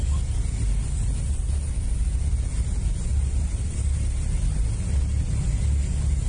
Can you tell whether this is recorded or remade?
recorded